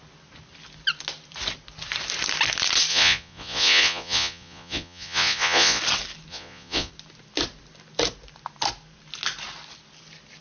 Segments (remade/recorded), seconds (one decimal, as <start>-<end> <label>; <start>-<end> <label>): 0.0-2.9 recorded; 2.9-5.8 remade; 5.8-6.3 recorded; 6.3-6.9 remade; 6.9-10.4 recorded